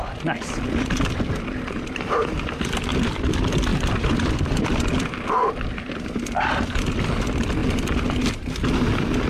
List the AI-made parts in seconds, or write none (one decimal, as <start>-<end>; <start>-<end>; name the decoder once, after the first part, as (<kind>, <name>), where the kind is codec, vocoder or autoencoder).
3.7-4.8 (vocoder, BigVGAN v2); 7.6-8.3